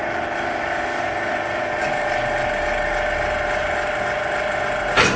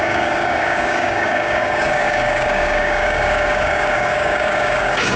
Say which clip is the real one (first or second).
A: first